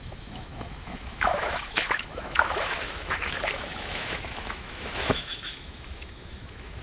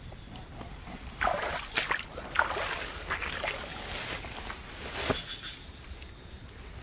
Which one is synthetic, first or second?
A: first